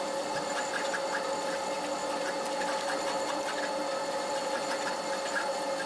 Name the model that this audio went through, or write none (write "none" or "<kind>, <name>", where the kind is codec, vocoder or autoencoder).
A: none